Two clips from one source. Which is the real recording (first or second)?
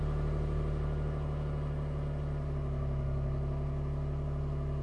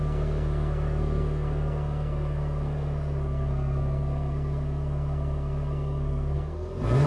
first